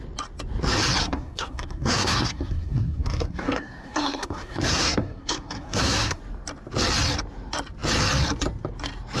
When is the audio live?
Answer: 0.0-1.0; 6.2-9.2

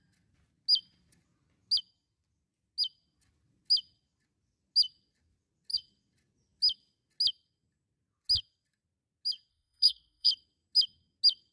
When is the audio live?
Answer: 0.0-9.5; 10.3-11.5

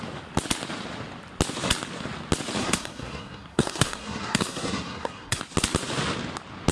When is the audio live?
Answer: 0.0-2.6; 5.4-6.7

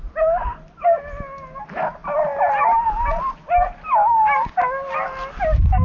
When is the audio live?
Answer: 0.0-5.8

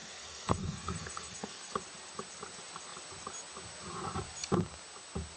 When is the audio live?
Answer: 1.7-5.4

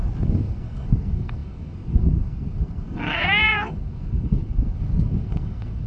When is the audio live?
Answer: none

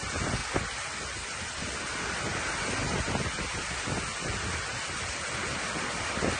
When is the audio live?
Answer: 0.0-6.4

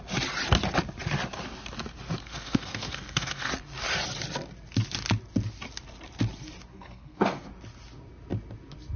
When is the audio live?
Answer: 0.0-2.2; 3.5-6.7; 7.5-9.0